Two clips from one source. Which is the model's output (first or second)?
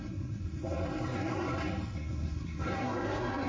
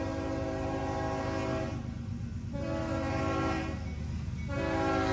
first